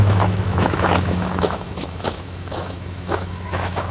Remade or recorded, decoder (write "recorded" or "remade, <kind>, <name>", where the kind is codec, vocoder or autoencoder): remade, autoencoder, DAC-VAE